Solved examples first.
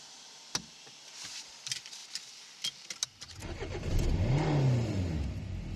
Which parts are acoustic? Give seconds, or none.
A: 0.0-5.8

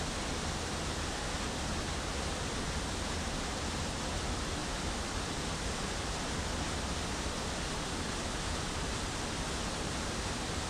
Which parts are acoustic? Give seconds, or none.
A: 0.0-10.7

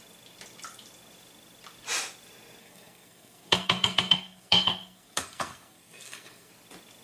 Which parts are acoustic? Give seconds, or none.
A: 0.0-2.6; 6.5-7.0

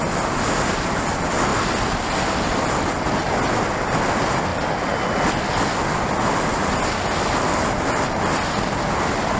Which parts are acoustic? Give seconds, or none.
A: 0.0-9.4

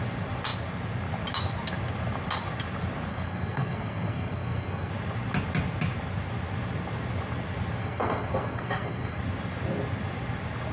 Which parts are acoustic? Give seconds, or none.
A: 0.0-3.1; 4.9-7.8; 9.2-10.7

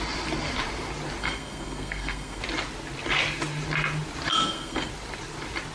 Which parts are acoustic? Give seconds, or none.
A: 0.0-1.2; 2.4-4.3; 4.9-5.7

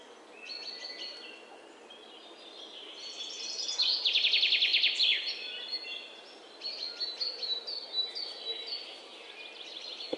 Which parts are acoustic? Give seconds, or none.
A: 0.0-10.2